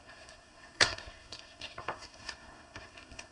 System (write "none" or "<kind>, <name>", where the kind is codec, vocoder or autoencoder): codec, SNAC